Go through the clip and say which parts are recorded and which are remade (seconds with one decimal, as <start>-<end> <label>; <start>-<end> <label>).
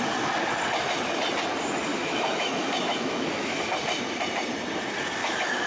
0.0-1.9 recorded; 1.9-3.6 remade; 3.6-5.2 recorded; 5.2-5.7 remade